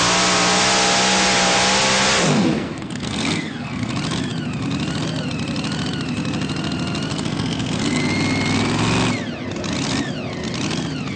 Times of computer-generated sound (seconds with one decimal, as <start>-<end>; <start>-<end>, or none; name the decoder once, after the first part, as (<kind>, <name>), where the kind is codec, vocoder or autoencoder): 2.3-3.9 (codec, SNAC); 7.1-8.0